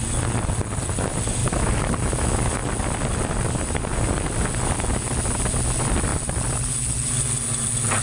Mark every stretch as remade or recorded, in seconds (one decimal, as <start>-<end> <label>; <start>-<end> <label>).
0.0-1.4 recorded; 1.4-2.1 remade; 2.1-8.0 recorded